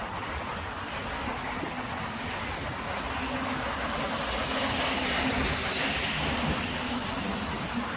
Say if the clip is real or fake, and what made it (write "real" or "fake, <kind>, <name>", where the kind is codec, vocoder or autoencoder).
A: real